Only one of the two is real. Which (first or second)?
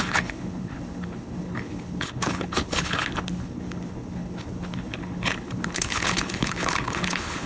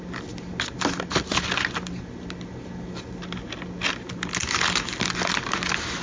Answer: second